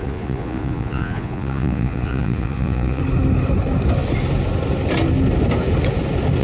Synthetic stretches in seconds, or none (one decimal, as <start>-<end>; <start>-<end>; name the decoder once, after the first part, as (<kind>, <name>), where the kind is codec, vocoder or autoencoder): 0.0-3.0 (vocoder, Vocos)